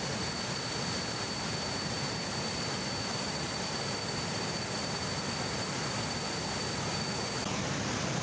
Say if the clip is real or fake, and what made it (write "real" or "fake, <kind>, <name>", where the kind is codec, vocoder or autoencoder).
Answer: real